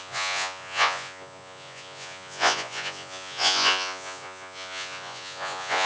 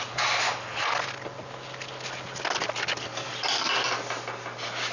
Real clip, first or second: second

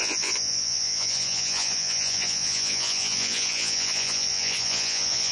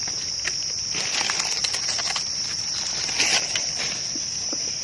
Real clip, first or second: second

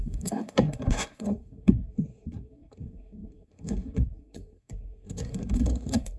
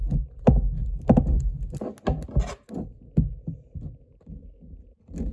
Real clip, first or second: second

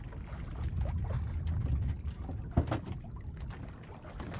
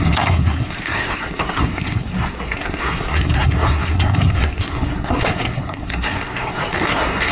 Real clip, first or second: first